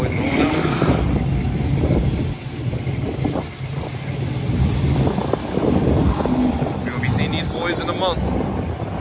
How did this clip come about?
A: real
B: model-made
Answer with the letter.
A